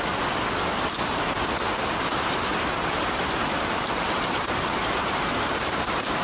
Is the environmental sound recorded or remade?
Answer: recorded